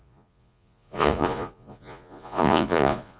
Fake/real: fake